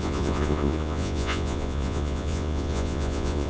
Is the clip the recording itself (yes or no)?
no